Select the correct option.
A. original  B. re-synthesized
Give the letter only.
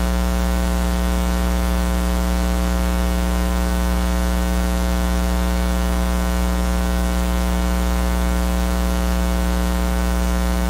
B